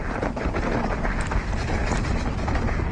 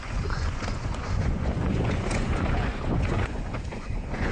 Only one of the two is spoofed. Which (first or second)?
second